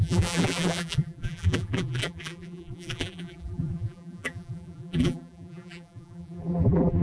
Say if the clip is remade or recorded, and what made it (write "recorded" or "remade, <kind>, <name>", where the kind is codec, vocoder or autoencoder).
remade, vocoder, BigVGAN v2